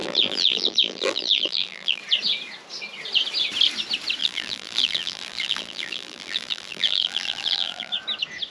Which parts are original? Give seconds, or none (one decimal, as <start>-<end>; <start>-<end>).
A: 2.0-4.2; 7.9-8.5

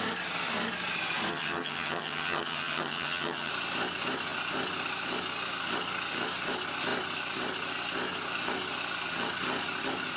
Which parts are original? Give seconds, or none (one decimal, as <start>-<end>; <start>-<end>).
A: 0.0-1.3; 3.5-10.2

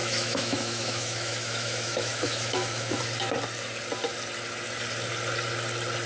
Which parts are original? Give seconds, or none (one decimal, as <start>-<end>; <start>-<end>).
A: 3.0-6.1

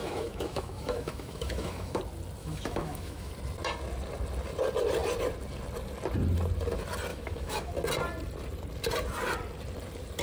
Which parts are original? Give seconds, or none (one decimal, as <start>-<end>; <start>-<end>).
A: 2.0-2.4; 3.3-7.1; 7.7-10.2